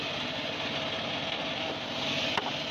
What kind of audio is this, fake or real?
real